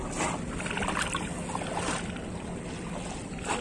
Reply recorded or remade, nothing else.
recorded